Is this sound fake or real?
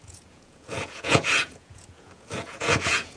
fake